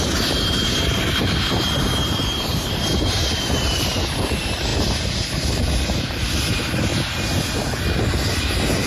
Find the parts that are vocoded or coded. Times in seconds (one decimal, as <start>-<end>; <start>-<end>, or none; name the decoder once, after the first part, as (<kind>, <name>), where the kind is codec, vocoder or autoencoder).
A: 0.0-6.9 (vocoder, BigVGAN v2); 8.3-8.9